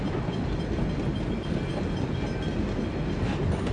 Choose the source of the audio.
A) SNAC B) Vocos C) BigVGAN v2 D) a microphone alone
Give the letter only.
D